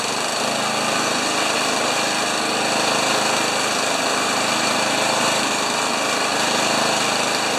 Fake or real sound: real